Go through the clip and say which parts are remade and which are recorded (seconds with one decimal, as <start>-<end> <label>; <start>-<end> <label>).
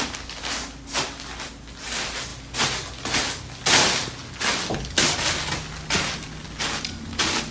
0.0-7.5 recorded